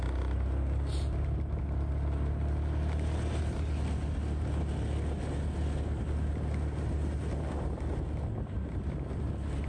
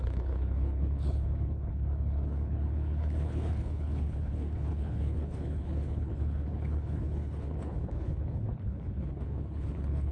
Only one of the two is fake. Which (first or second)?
second